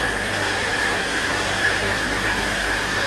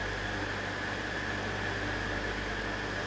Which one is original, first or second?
second